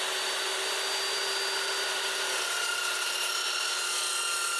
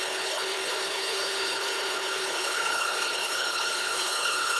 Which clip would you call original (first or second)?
first